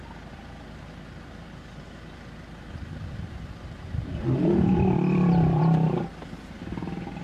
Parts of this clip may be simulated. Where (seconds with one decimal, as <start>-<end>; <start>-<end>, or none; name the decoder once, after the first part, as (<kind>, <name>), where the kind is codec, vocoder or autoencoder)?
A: 2.7-5.6 (vocoder, BigVGAN v2)